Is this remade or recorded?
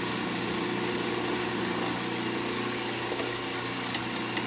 recorded